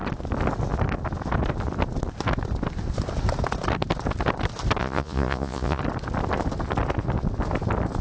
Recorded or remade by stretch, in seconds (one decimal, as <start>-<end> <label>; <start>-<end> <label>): 0.0-4.8 recorded; 4.8-5.8 remade; 5.8-8.0 recorded